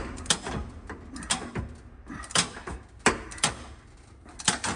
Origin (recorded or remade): recorded